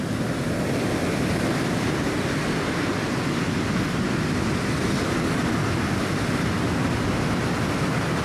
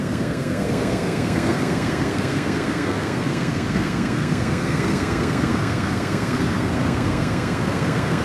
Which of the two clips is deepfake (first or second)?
second